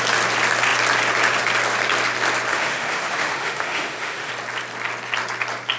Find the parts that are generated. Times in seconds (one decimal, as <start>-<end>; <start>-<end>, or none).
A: 2.5-4.3